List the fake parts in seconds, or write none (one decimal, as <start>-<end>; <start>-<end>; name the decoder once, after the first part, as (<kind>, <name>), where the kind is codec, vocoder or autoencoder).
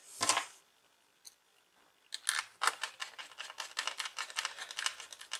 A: none